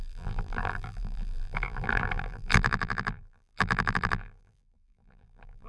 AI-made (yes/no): yes